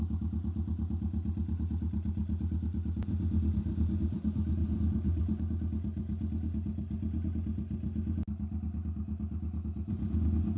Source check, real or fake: real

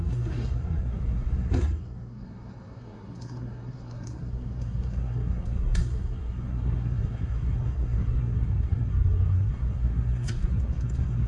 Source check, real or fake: fake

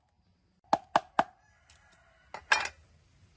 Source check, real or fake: real